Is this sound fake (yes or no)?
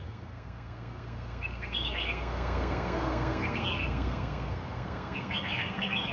yes